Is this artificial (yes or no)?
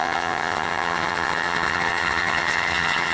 yes